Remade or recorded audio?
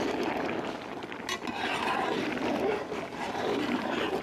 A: recorded